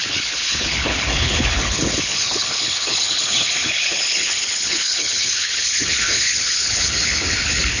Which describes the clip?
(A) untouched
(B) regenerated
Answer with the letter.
B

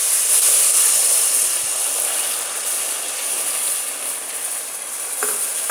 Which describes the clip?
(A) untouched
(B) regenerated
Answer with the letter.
A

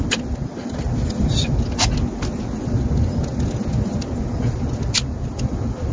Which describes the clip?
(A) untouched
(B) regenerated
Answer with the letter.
A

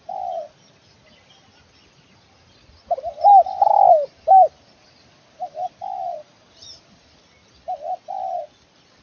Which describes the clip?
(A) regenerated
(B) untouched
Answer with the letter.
B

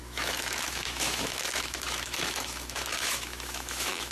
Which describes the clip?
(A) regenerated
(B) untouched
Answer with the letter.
A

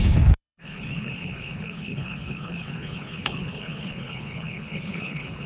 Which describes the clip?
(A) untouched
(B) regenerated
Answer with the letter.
B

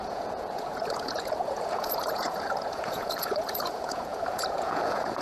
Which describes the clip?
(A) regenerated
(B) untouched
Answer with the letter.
A